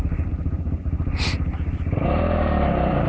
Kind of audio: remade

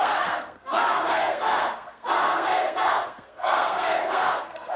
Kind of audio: remade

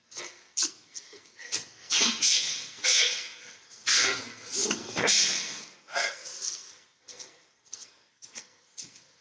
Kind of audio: remade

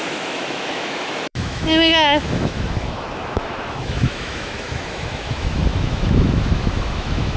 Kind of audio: remade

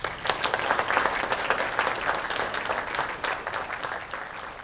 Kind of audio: recorded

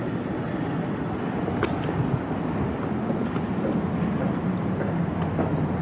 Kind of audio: recorded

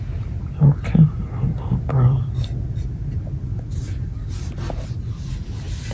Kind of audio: recorded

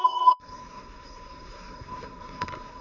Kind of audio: remade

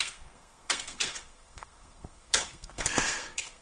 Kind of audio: remade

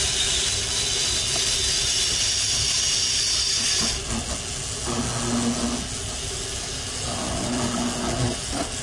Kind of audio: recorded